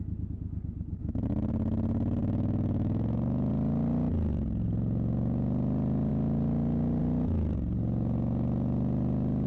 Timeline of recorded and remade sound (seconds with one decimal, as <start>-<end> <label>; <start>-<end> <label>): 0.0-0.9 recorded; 0.9-1.5 remade; 1.5-2.2 recorded; 2.2-3.5 remade; 3.5-9.5 recorded